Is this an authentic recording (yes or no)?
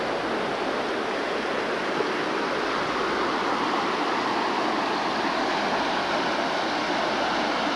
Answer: yes